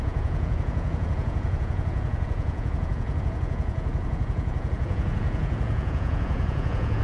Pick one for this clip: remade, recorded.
remade